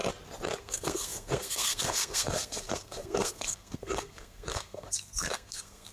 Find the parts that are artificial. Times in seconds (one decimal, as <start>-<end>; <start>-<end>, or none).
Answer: 0.6-5.9